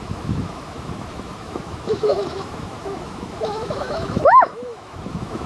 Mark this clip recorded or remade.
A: remade